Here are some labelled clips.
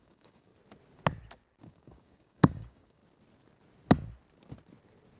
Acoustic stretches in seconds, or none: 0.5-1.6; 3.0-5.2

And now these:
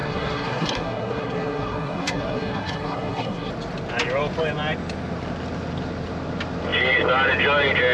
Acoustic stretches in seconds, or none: 3.5-7.9